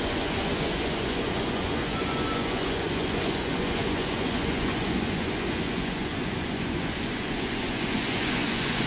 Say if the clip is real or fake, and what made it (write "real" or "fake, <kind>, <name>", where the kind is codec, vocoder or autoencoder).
fake, vocoder, Vocos